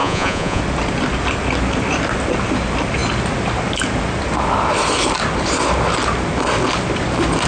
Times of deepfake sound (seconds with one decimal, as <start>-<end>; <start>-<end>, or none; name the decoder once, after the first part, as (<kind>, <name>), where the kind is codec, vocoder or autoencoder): 0.0-0.6 (vocoder, Vocos)